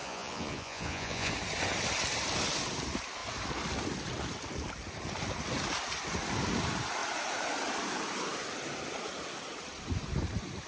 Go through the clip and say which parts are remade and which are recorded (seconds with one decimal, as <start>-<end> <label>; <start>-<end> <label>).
0.0-1.3 remade; 1.3-10.7 recorded